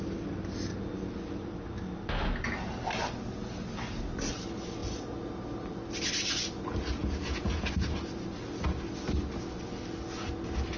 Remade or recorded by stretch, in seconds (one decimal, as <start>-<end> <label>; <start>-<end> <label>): 0.0-7.0 recorded; 7.0-7.7 remade; 7.7-10.8 recorded